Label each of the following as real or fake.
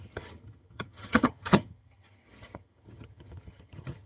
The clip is fake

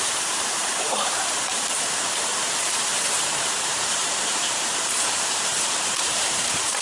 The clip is fake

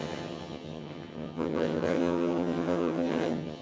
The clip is fake